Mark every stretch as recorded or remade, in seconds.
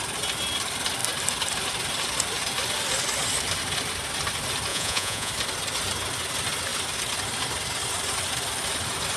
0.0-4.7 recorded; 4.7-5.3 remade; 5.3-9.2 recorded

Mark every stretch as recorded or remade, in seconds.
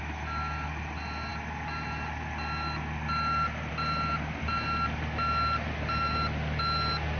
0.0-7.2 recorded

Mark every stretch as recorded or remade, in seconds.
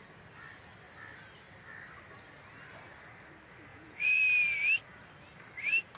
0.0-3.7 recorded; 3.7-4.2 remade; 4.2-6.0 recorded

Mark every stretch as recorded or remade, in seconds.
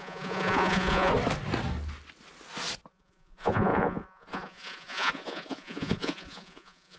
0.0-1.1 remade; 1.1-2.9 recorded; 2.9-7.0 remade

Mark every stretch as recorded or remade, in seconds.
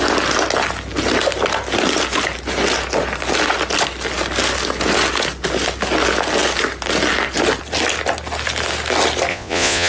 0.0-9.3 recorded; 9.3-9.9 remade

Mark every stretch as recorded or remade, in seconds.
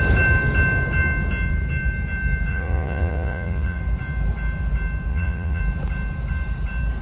0.0-2.5 recorded; 2.5-3.8 remade; 3.8-5.1 recorded; 5.1-5.6 remade; 5.6-7.0 recorded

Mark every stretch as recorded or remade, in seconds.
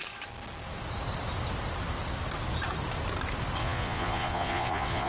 0.0-3.6 recorded; 3.6-5.1 remade